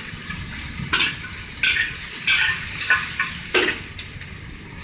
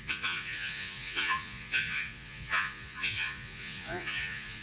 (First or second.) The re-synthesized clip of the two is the second